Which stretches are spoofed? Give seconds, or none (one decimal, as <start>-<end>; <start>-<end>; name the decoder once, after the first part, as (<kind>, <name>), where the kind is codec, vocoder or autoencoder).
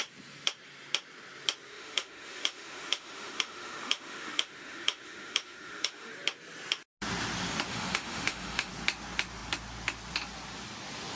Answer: 1.7-6.1 (autoencoder, DAC-VAE); 7.7-8.7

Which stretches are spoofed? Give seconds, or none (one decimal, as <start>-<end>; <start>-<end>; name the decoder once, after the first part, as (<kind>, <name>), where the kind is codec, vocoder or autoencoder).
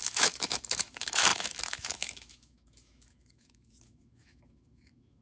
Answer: 0.0-5.2 (autoencoder, DAC-VAE)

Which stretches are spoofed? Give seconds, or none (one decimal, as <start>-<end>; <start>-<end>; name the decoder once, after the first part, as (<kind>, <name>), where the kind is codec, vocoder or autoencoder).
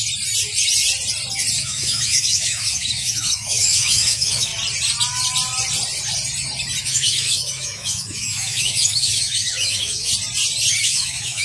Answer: 1.6-4.5 (autoencoder, DAC-VAE); 6.8-10.1; 10.8-11.4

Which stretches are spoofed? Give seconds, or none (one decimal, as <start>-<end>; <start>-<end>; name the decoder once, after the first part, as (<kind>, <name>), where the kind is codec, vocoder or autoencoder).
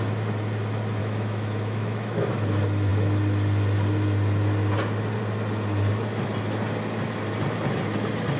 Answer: 1.0-2.3 (autoencoder, DAC-VAE)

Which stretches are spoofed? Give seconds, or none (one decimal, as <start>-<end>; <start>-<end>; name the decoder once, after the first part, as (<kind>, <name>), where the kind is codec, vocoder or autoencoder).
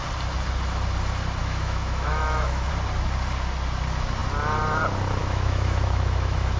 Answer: 1.4-2.7 (autoencoder, DAC-VAE); 5.2-6.6